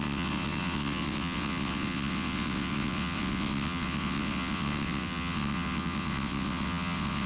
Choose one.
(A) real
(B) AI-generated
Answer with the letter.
B